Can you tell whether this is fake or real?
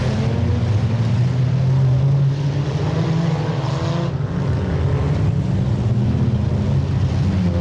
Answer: real